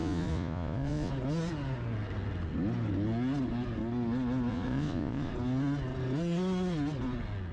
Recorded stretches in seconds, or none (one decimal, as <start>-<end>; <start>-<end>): 1.1-4.5; 5.3-7.5